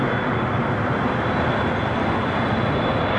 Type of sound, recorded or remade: recorded